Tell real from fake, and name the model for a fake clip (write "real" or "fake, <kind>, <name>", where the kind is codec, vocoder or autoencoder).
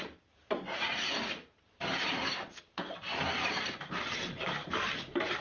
fake, vocoder, BigVGAN v2